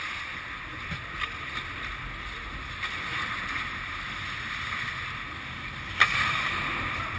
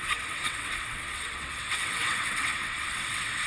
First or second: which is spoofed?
second